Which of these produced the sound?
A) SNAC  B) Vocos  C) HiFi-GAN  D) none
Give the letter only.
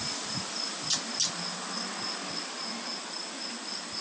D